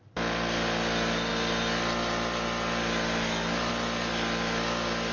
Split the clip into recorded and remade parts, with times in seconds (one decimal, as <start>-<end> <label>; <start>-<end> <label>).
0.0-5.1 recorded

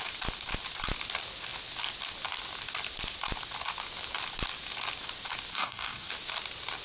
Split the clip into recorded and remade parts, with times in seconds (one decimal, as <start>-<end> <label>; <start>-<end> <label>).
0.0-5.5 recorded; 5.5-6.1 remade; 6.1-6.8 recorded

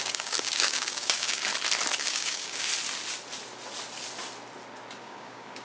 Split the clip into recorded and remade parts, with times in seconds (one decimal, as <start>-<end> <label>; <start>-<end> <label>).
0.0-1.5 remade; 1.5-2.0 recorded; 2.0-2.7 remade; 2.7-5.0 recorded; 5.0-5.6 remade

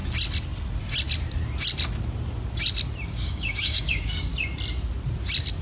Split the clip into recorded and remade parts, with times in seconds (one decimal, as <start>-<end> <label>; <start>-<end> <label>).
0.0-3.1 recorded; 3.1-4.3 remade; 4.3-5.6 recorded

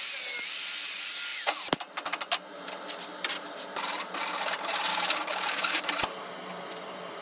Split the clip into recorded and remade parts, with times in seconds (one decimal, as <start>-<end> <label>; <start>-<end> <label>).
0.0-4.9 recorded; 4.9-5.8 remade; 5.8-7.2 recorded